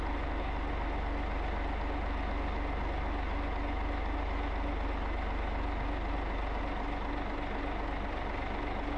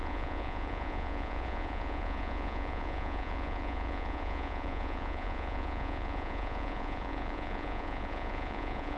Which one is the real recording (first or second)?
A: first